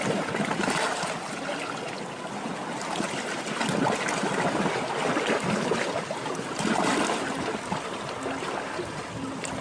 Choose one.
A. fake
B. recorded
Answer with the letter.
B